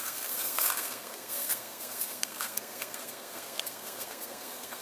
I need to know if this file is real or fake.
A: fake